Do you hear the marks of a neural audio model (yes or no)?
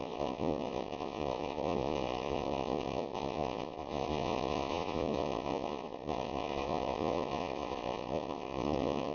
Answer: yes